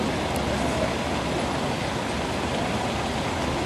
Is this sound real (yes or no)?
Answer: yes